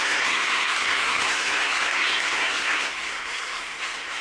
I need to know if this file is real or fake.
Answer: fake